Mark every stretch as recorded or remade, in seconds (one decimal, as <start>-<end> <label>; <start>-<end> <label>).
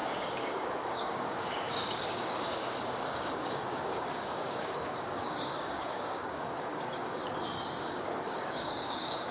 0.0-7.2 remade; 7.2-7.8 recorded; 7.8-9.3 remade